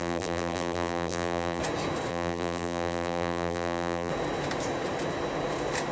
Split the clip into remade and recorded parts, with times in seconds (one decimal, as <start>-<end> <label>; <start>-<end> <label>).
0.0-1.6 remade; 1.6-2.1 recorded; 2.1-4.1 remade; 4.1-5.9 recorded